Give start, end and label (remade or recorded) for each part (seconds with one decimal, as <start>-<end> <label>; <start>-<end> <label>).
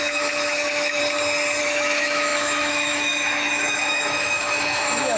0.0-1.0 remade; 1.0-1.6 recorded; 1.6-5.2 remade